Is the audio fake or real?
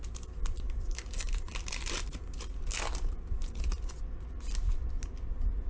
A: real